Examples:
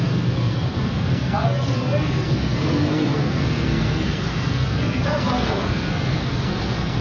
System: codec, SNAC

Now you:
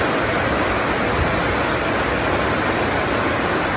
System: none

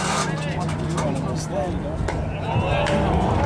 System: none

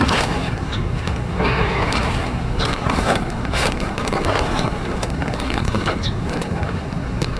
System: codec, SNAC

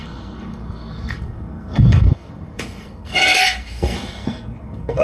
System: codec, SNAC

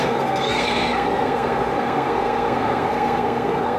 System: codec, SNAC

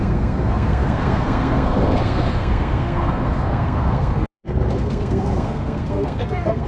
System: codec, SNAC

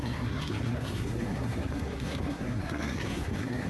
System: codec, SNAC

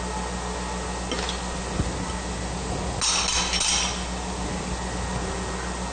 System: none